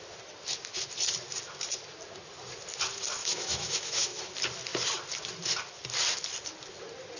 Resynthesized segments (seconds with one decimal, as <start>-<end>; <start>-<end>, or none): 3.2-4.2